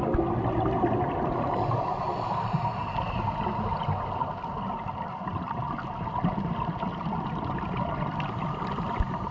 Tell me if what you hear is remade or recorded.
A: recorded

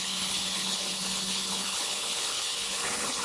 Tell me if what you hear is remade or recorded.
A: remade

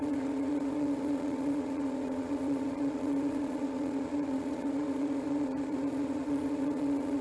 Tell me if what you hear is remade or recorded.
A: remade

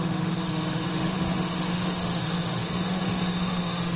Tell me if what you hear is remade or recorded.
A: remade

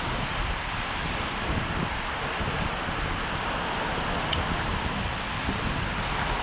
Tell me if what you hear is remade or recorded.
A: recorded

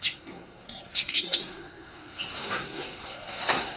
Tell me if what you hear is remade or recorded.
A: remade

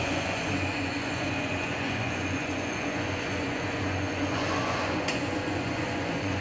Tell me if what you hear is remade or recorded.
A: remade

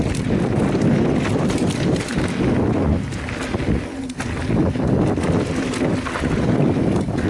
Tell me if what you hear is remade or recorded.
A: recorded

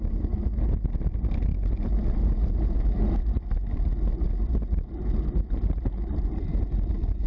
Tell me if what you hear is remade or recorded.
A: recorded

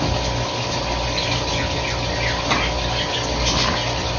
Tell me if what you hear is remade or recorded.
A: recorded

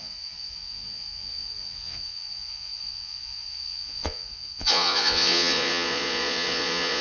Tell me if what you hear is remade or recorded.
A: remade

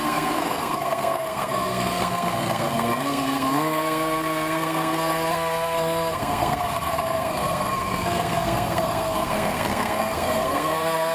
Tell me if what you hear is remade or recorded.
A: remade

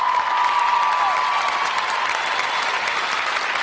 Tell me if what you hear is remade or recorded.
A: recorded